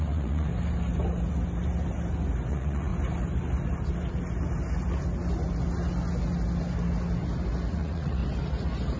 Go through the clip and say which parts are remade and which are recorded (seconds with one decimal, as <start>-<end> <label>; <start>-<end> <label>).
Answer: 0.0-0.5 remade; 0.5-2.5 recorded; 2.5-2.9 remade; 2.9-7.7 recorded; 7.7-8.2 remade; 8.2-9.0 recorded